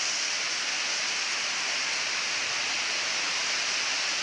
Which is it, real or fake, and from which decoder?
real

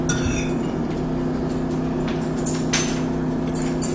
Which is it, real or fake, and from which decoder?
real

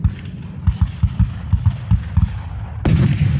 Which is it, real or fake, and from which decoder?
real